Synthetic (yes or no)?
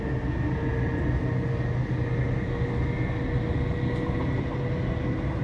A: no